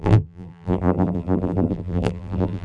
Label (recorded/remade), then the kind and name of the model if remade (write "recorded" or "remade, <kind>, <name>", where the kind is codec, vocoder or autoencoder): remade, vocoder, BigVGAN v2